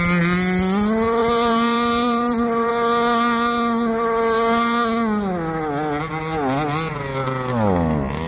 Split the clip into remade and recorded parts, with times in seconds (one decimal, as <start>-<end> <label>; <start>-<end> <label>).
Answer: 0.0-1.2 recorded; 1.2-2.7 remade; 2.7-8.3 recorded